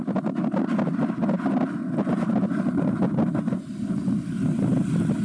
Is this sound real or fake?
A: real